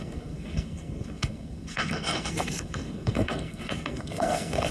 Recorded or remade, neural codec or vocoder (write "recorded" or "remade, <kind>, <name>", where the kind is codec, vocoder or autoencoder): remade, codec, SNAC